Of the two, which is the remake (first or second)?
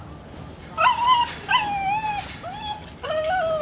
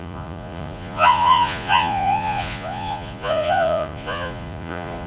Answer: second